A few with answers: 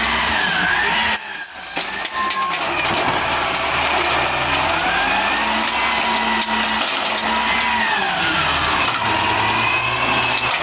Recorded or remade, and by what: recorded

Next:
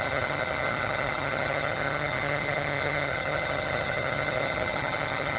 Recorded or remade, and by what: remade, vocoder, HiFi-GAN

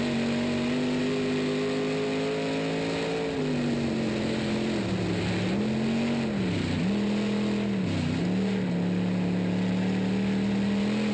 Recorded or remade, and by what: recorded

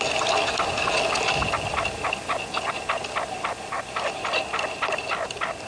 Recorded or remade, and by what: recorded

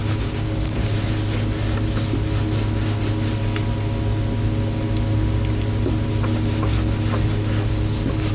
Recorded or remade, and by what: recorded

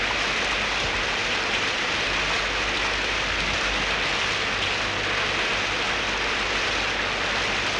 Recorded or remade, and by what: recorded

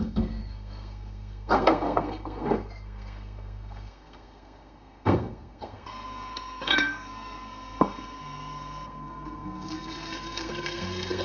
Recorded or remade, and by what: remade, codec, SNAC